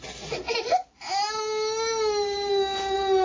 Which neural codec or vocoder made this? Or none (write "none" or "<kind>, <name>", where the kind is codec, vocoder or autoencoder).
none